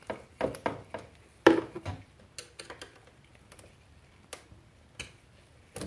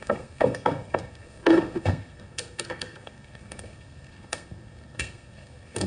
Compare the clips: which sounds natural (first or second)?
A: first